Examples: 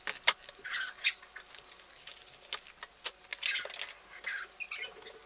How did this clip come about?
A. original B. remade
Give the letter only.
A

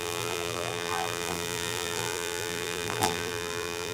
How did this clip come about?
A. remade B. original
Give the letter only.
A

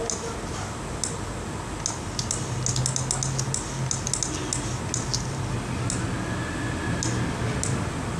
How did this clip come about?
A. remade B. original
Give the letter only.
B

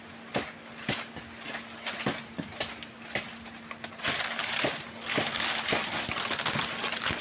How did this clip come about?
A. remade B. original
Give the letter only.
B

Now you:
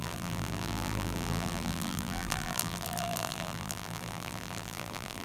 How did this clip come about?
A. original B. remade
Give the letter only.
B